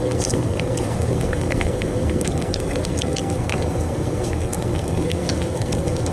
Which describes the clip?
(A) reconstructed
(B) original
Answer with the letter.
A